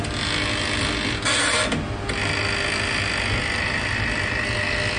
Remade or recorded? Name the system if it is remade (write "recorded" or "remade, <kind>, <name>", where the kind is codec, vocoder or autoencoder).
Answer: recorded